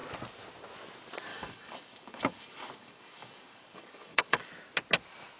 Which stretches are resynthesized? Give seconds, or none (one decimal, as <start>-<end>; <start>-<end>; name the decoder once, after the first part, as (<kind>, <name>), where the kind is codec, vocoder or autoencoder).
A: 1.3-4.5 (codec, DAC)